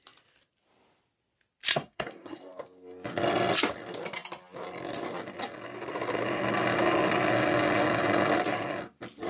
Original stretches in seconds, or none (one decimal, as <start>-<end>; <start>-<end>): 0.0-1.7; 2.4-9.3